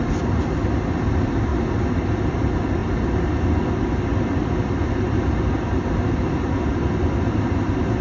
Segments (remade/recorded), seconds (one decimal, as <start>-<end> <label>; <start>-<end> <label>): 0.0-8.0 recorded